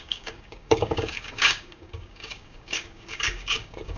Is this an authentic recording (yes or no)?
no